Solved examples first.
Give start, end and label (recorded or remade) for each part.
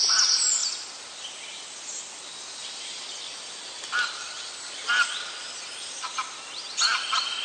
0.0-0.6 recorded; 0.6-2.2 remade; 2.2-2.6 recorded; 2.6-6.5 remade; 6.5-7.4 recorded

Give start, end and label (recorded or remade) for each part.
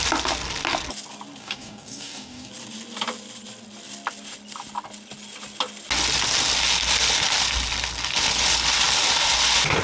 0.0-1.4 recorded; 1.4-2.5 remade; 2.5-9.8 recorded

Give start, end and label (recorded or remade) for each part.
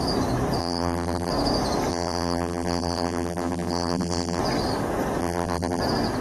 0.0-0.6 recorded; 0.6-1.3 remade; 1.3-1.9 recorded; 1.9-4.4 remade; 4.4-5.2 recorded; 5.2-5.8 remade; 5.8-6.2 recorded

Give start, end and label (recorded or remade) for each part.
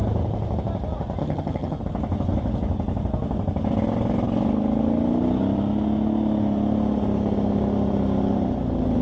0.0-1.2 recorded; 1.2-1.8 remade; 1.8-9.0 recorded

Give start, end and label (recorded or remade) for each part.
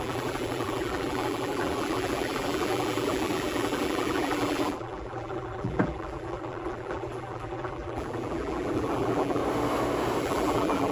0.0-9.4 remade; 9.4-10.2 recorded; 10.2-10.9 remade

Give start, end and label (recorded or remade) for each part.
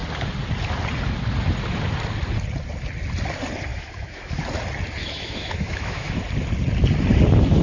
0.0-3.7 recorded; 3.7-4.3 remade; 4.3-5.0 recorded; 5.0-6.2 remade; 6.2-7.6 recorded